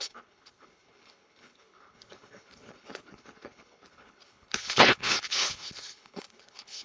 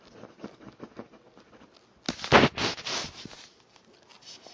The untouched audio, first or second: second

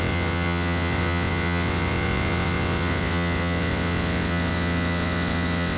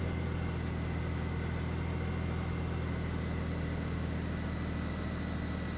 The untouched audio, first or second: second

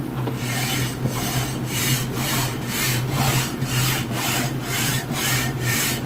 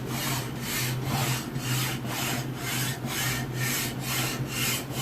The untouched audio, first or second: second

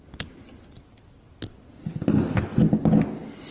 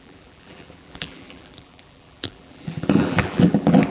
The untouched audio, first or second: first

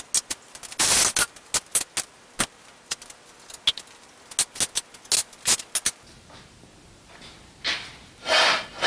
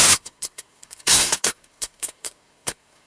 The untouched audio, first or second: first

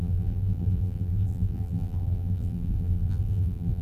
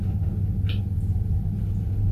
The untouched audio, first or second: second